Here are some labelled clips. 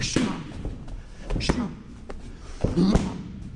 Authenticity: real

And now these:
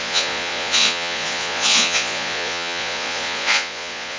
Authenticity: fake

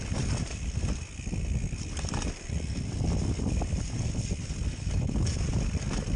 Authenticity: real